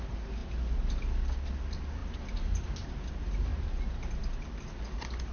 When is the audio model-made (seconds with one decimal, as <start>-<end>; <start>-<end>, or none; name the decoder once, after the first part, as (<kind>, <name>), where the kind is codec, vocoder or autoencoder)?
none